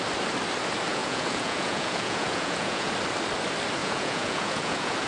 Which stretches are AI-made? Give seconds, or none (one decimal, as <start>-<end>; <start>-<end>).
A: 0.9-2.9; 3.8-5.1

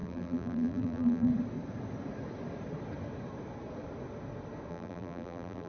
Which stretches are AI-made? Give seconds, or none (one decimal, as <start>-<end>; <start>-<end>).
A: 0.0-1.3; 4.7-5.7

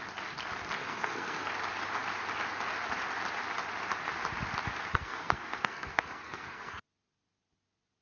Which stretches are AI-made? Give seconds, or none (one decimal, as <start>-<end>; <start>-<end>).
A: 0.8-1.5; 4.9-6.8

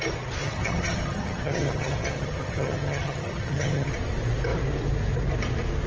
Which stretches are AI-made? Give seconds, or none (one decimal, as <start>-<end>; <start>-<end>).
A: 0.4-3.9

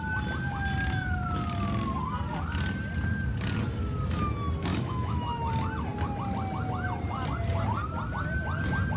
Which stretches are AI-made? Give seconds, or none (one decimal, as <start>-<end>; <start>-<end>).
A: 4.7-5.5